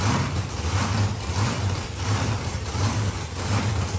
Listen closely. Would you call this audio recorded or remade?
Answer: remade